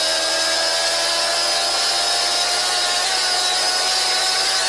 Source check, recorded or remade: recorded